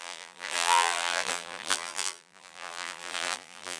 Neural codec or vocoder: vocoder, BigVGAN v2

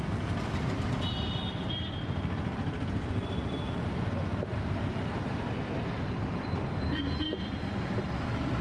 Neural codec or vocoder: vocoder, BigVGAN v2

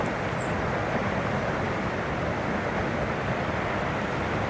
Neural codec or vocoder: none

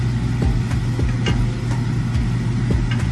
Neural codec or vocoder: none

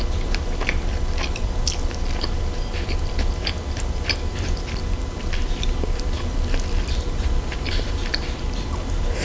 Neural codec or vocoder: vocoder, BigVGAN v2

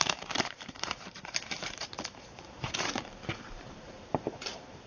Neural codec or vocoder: vocoder, BigVGAN v2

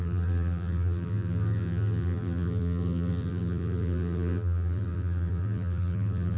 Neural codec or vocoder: vocoder, BigVGAN v2